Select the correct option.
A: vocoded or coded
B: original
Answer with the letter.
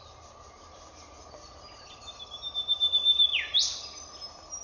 B